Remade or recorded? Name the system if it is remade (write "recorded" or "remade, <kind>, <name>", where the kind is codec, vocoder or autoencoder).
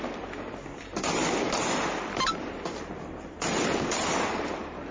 recorded